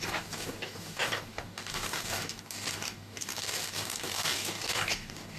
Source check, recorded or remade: remade